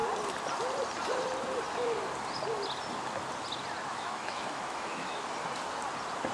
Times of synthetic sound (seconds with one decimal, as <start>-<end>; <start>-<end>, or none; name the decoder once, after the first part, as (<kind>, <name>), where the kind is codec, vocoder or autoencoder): 3.9-5.3 (autoencoder, DAC-VAE)

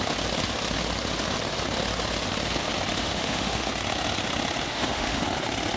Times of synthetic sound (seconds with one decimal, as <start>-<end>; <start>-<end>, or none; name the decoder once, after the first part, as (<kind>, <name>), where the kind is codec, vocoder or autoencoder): 3.0-3.7 (autoencoder, DAC-VAE); 4.7-5.2